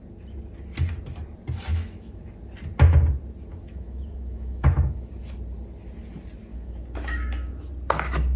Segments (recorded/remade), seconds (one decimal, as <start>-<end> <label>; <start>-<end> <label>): 0.0-1.7 recorded; 1.7-2.3 remade; 2.3-3.5 recorded; 3.5-5.1 remade; 5.1-6.5 recorded; 6.5-7.7 remade; 7.7-8.4 recorded